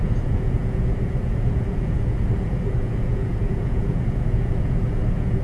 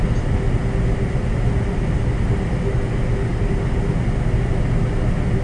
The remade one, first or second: first